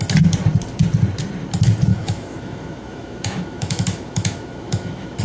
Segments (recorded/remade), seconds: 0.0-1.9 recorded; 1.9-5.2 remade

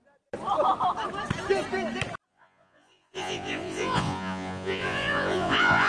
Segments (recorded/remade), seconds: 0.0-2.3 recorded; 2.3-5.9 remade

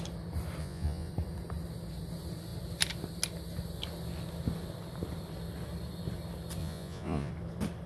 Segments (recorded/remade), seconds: 0.0-0.6 recorded; 0.6-1.1 remade; 1.1-6.6 recorded; 6.6-7.3 remade; 7.3-7.9 recorded

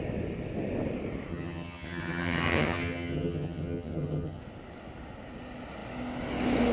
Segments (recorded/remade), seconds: 0.0-1.3 recorded; 1.3-4.4 remade; 4.4-6.7 recorded

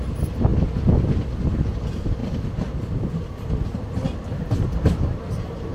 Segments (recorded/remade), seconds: 0.0-5.7 recorded

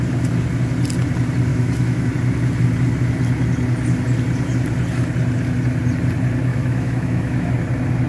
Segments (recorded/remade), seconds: 0.0-1.5 recorded; 1.5-2.1 remade; 2.1-6.5 recorded; 6.5-7.5 remade; 7.5-8.1 recorded

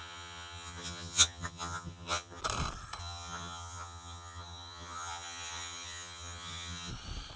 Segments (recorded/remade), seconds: 0.0-2.4 remade; 2.4-3.0 recorded; 3.0-6.9 remade; 6.9-7.4 recorded